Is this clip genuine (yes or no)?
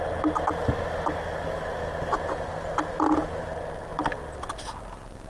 yes